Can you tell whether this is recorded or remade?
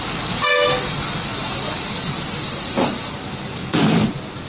recorded